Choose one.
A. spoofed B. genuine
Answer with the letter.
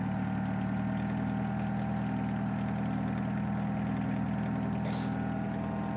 B